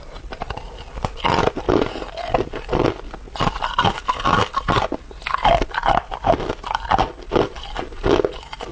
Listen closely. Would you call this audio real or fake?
real